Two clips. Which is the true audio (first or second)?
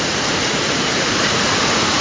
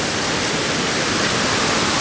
second